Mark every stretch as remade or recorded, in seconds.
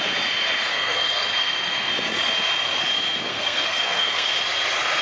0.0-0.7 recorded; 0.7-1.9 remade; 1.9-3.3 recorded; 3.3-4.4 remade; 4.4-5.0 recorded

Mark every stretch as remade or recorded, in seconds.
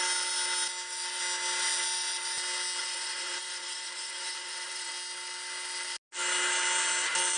0.0-2.8 recorded; 2.8-4.9 remade; 4.9-7.4 recorded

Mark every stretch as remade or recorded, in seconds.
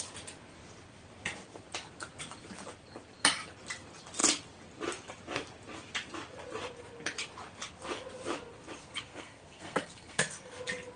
0.0-8.8 recorded; 8.8-10.6 remade; 10.6-11.0 recorded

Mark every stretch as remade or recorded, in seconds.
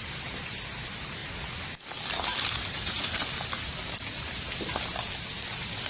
0.0-5.9 recorded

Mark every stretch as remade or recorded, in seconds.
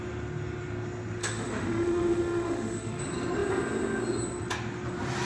0.0-1.2 recorded; 1.2-3.0 remade; 3.0-5.3 recorded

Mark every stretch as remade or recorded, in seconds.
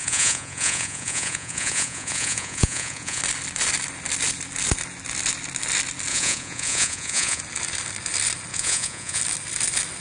0.0-3.2 remade; 3.2-6.1 recorded; 6.1-7.4 remade; 7.4-8.5 recorded; 8.5-9.2 remade; 9.2-10.0 recorded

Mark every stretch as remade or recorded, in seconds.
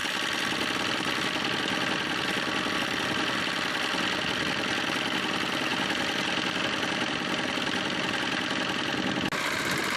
0.0-10.0 recorded